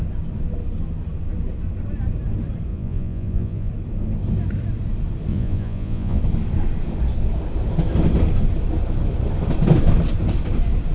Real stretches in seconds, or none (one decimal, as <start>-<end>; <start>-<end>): 0.0-2.7; 3.7-5.3; 6.2-10.9